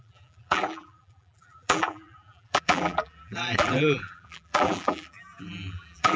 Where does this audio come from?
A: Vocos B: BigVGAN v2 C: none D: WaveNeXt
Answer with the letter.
B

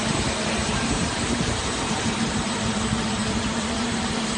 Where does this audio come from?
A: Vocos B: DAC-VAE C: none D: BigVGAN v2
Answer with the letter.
D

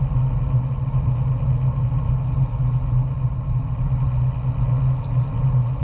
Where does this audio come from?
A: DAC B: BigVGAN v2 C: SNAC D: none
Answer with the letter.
D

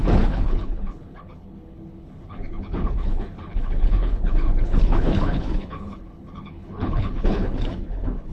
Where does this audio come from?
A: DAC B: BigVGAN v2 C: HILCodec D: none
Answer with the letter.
C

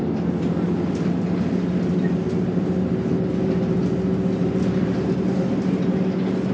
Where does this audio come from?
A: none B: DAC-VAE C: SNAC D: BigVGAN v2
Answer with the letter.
A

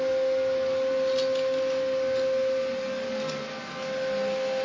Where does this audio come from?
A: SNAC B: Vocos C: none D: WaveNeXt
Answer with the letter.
C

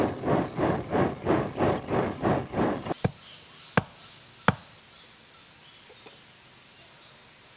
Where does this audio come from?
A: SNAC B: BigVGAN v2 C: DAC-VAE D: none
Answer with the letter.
D